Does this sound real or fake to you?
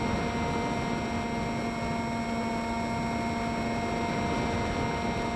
real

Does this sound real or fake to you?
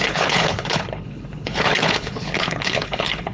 fake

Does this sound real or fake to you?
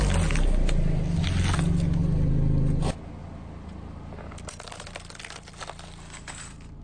real